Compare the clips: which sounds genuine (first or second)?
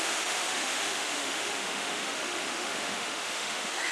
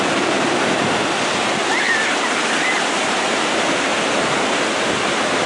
second